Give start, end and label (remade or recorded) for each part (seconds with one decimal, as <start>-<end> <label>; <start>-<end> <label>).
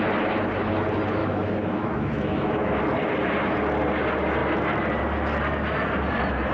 0.0-1.2 recorded; 1.2-2.8 remade; 2.8-6.5 recorded